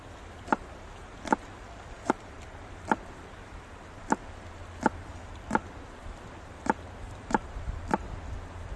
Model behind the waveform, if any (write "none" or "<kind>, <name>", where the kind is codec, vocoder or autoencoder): none